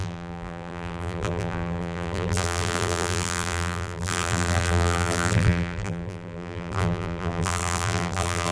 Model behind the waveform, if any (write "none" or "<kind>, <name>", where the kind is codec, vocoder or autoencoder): vocoder, BigVGAN v2